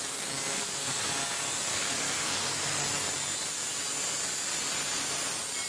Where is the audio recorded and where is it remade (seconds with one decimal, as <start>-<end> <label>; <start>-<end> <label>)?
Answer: 0.0-0.5 recorded; 0.5-1.1 remade; 1.1-1.7 recorded; 1.7-2.8 remade; 2.8-5.7 recorded